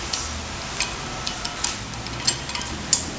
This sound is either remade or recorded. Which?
recorded